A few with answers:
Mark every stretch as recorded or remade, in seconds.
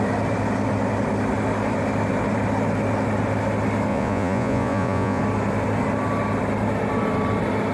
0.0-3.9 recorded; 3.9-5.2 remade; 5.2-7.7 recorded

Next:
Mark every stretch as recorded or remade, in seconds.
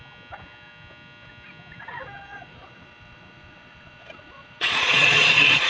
0.0-2.3 recorded; 2.3-5.7 remade